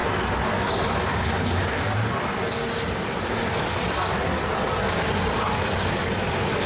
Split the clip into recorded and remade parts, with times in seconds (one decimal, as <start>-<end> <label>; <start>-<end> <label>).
0.0-6.7 recorded